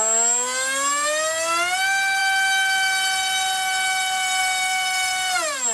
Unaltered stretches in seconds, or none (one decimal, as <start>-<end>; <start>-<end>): 0.0-5.7